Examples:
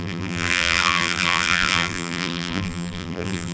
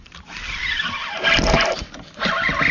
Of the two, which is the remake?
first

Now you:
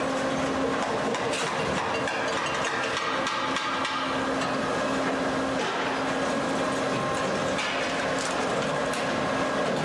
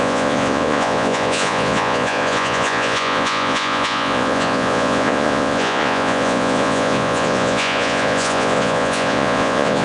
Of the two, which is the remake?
second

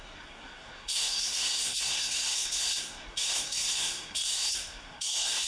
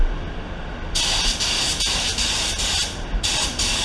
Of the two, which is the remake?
first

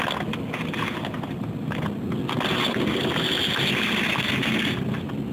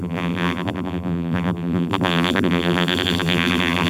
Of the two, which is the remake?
second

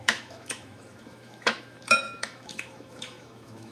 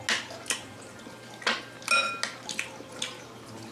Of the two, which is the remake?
first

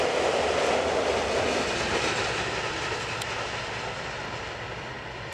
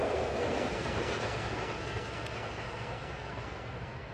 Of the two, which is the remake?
second